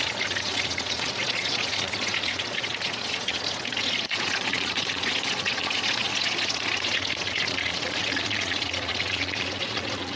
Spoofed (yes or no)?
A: yes